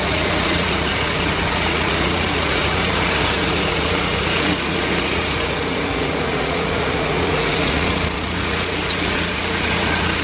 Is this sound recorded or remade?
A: remade